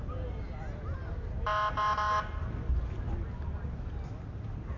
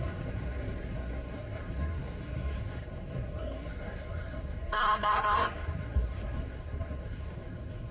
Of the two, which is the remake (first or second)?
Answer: second